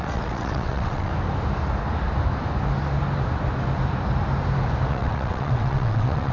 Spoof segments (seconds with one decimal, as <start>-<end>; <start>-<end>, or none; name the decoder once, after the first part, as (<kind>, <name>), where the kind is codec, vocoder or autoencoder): 0.0-1.1 (vocoder, WaveNeXt); 4.9-6.3